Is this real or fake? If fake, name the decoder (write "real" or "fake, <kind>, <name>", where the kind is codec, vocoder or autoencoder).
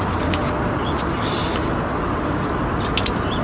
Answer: real